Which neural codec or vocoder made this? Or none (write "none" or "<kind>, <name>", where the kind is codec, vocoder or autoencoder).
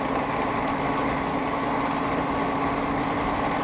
none